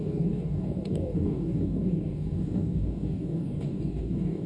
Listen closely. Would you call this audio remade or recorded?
remade